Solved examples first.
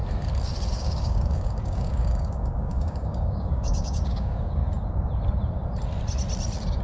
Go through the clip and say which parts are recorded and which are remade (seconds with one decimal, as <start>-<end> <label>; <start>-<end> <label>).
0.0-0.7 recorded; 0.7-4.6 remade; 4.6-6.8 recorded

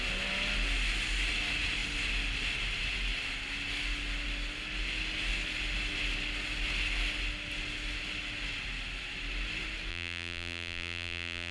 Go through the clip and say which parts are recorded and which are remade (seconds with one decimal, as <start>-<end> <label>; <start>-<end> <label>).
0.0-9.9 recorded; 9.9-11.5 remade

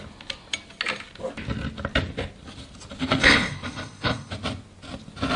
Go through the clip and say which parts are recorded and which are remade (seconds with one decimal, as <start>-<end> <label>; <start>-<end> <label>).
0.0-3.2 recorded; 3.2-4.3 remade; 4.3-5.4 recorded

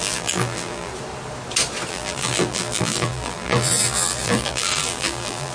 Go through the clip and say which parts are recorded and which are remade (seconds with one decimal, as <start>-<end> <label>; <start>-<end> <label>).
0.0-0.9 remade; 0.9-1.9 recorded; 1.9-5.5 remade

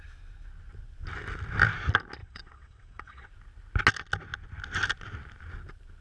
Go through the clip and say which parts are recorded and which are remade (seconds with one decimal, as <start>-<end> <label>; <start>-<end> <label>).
0.0-2.2 recorded; 2.2-3.3 remade; 3.3-6.0 recorded

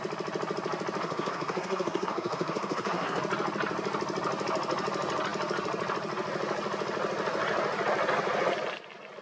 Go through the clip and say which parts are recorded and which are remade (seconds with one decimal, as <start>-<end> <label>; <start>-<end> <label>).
0.0-1.0 recorded; 1.0-3.2 remade; 3.2-9.2 recorded

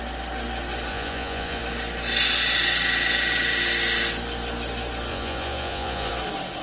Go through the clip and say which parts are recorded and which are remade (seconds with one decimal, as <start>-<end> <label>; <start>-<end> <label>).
0.0-0.9 recorded; 0.9-1.6 remade; 1.6-5.1 recorded; 5.1-6.1 remade; 6.1-6.6 recorded